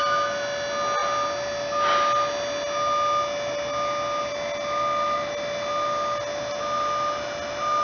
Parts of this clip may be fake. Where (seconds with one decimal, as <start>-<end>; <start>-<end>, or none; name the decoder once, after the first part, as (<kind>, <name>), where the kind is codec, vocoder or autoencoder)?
none